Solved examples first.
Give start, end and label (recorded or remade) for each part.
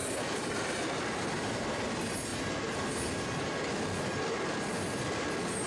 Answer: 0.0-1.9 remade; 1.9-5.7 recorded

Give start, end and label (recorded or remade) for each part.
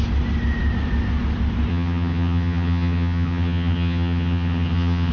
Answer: 0.0-1.7 recorded; 1.7-5.1 remade